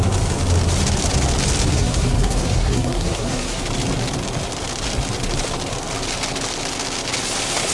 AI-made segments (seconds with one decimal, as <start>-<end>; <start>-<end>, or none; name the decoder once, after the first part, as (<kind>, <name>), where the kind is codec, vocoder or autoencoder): 1.7-3.6 (codec, SNAC)